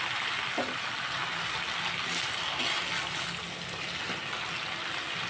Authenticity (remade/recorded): recorded